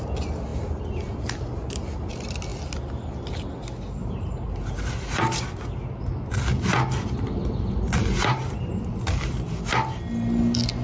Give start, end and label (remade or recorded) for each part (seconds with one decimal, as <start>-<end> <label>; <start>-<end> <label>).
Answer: 0.0-4.0 recorded; 4.0-5.4 remade; 5.4-8.0 recorded; 8.0-8.8 remade; 8.8-10.8 recorded